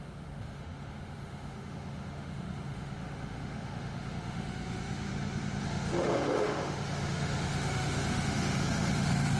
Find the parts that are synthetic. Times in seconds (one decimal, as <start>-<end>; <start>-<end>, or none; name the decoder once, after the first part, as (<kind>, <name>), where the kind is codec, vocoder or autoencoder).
0.0-5.1 (autoencoder, DAC-VAE); 5.6-9.4

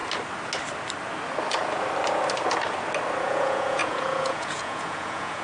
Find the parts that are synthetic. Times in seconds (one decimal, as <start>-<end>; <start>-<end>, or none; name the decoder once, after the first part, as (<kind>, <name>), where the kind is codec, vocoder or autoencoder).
3.2-5.4 (vocoder, Vocos)

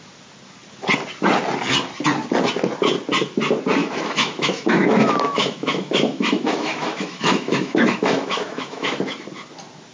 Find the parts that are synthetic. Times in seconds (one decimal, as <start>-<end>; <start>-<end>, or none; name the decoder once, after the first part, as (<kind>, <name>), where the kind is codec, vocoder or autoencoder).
3.8-9.0 (autoencoder, DAC-VAE)